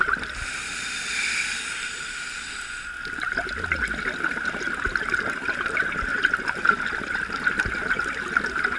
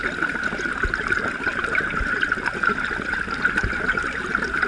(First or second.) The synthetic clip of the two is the second